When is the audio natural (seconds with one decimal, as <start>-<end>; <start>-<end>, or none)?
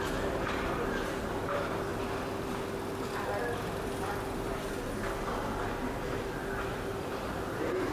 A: 0.0-7.9